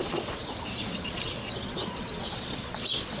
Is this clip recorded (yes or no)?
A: no